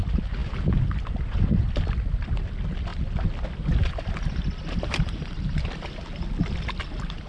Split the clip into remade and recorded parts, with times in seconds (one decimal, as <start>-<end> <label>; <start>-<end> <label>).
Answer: 0.0-7.3 recorded